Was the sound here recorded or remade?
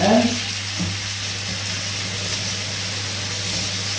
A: recorded